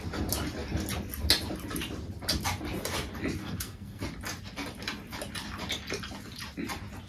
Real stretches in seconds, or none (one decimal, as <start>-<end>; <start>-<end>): 0.0-3.4; 4.0-7.1